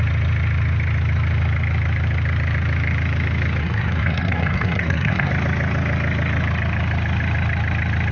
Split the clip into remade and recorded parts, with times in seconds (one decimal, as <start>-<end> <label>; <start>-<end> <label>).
0.0-3.6 recorded; 3.6-5.3 remade; 5.3-8.1 recorded